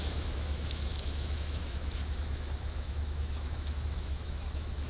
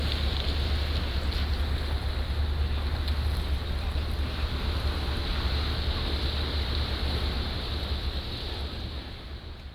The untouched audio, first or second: second